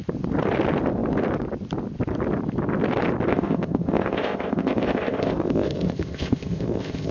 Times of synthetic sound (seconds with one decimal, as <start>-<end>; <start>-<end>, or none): 3.3-7.1